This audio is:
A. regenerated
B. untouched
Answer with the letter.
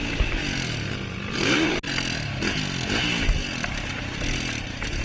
B